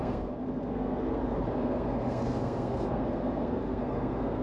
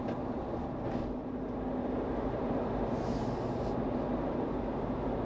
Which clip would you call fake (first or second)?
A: first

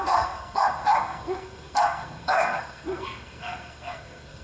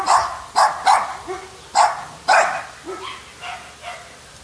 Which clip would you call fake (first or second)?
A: first